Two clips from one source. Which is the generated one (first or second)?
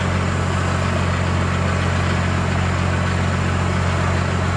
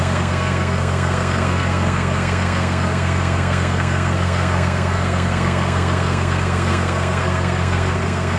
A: second